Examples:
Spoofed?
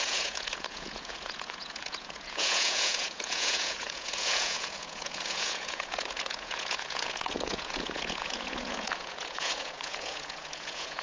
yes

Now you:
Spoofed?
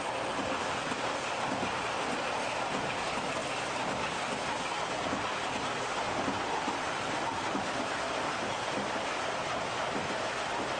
no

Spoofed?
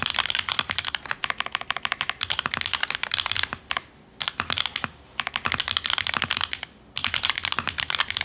no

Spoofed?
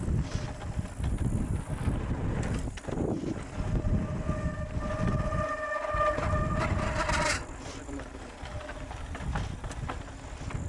no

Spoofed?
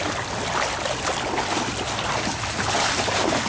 no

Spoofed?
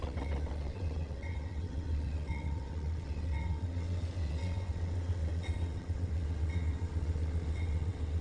yes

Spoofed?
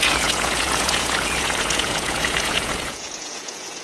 yes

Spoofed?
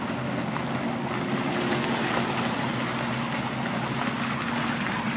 no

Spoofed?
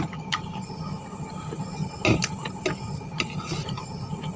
no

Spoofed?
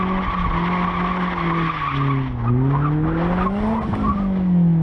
no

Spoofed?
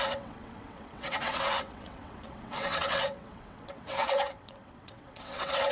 yes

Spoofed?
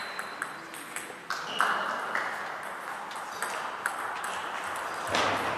no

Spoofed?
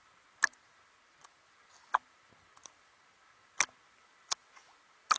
no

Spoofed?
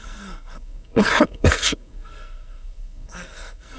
yes